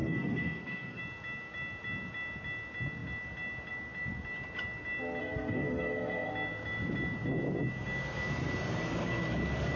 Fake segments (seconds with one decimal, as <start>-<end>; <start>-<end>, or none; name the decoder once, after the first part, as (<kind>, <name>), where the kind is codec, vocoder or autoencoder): 0.0-1.0 (codec, SNAC); 5.2-6.3